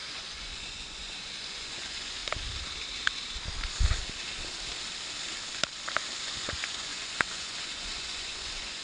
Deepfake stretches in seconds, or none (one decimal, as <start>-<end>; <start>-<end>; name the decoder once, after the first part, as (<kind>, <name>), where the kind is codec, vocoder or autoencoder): 0.0-2.2 (vocoder, Vocos); 6.2-8.8